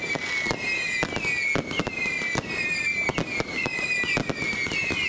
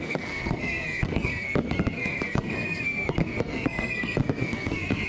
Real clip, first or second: first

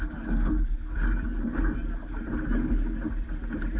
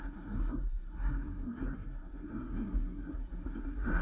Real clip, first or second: first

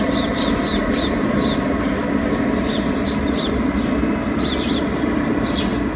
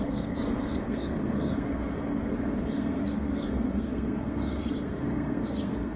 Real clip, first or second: first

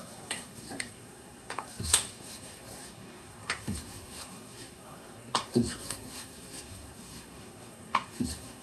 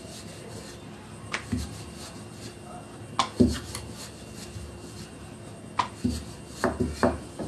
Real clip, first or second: second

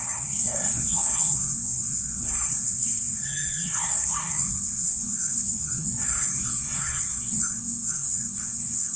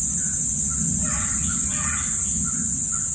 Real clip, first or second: second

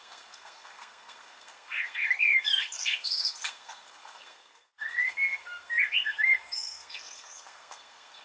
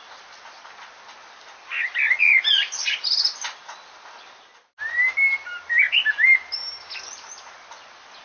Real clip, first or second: second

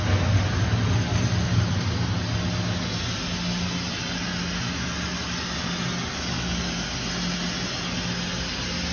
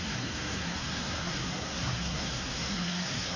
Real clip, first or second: first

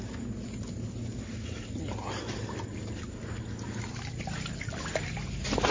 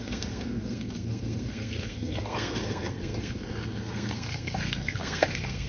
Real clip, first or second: first